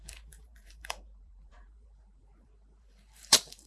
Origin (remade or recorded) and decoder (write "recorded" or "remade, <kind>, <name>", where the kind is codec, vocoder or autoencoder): remade, vocoder, BigVGAN v2